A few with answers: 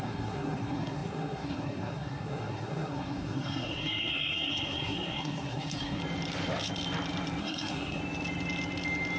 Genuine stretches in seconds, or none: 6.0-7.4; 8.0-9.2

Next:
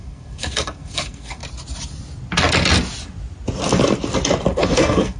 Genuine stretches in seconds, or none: 1.4-4.5